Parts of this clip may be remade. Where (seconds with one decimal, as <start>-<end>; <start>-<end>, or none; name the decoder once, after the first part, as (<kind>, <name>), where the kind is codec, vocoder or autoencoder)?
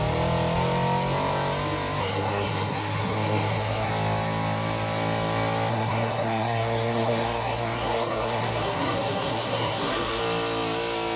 2.0-3.9 (codec, SNAC); 5.7-10.2